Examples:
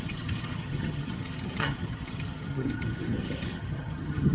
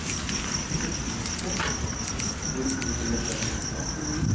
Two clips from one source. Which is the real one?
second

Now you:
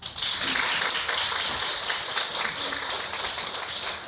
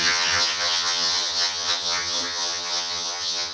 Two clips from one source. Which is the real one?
first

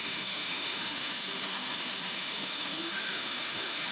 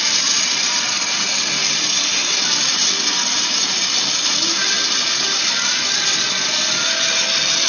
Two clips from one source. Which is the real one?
second